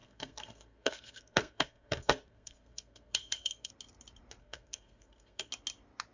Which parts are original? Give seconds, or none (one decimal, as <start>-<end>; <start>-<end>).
3.7-4.4; 5.5-6.1

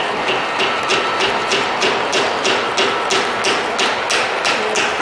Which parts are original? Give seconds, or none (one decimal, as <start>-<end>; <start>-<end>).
0.0-0.9; 2.7-5.0

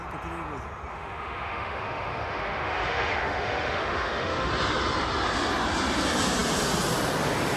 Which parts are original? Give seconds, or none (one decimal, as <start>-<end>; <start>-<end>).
0.0-0.9; 4.5-7.6

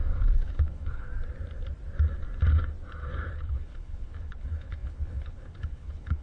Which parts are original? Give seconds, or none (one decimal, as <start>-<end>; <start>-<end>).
1.1-3.3

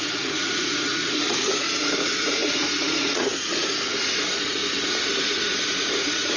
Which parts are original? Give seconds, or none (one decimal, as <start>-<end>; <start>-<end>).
none